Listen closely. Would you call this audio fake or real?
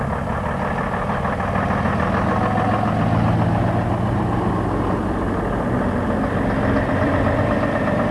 real